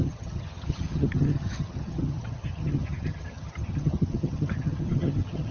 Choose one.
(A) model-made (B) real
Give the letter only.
A